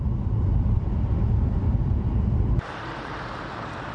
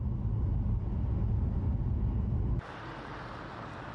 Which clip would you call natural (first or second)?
second